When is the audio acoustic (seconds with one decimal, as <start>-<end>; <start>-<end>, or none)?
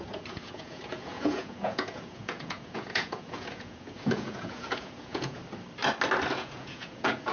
5.4-6.3